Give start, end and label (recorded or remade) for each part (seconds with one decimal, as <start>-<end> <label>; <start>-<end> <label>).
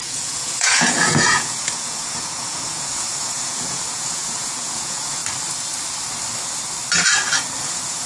0.0-5.2 remade; 5.2-7.6 recorded; 7.6-8.1 remade